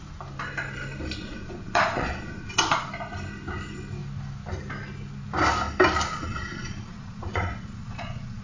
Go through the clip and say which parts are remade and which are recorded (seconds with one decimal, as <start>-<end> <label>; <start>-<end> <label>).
0.0-1.2 recorded; 1.2-2.9 remade; 2.9-6.1 recorded; 6.1-8.4 remade